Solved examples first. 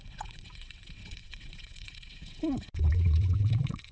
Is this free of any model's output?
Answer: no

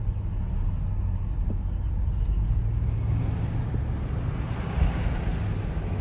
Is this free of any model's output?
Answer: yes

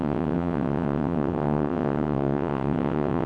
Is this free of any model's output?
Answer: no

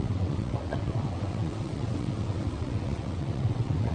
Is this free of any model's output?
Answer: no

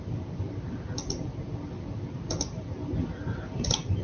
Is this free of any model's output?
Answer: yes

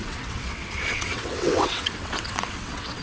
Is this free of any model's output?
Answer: no